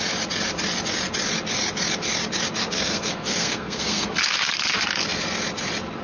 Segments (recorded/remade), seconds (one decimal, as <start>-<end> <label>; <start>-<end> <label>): 0.0-2.6 recorded; 2.6-4.2 remade; 4.2-6.0 recorded